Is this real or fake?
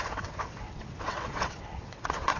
fake